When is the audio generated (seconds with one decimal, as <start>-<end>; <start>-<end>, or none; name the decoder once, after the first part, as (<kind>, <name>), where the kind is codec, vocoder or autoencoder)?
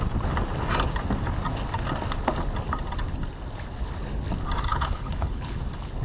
4.7-5.6 (codec, HILCodec)